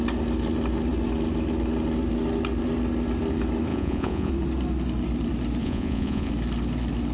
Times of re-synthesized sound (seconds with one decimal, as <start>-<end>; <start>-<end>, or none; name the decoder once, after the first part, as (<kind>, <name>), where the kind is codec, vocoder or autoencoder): 3.7-4.3 (vocoder, Vocos); 5.6-6.3